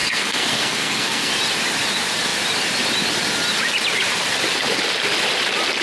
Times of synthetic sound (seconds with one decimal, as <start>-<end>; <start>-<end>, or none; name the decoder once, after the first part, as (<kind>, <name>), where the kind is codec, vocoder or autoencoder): 0.0-1.3 (codec, SNAC)